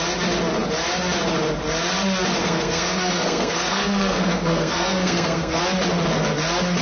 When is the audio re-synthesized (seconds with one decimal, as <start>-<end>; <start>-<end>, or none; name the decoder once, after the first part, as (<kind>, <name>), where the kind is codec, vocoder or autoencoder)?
2.4-5.6 (codec, SNAC)